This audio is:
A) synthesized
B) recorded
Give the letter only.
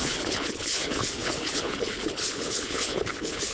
A